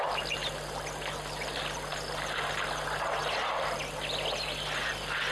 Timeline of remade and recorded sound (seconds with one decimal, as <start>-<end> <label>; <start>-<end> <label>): 0.0-5.3 recorded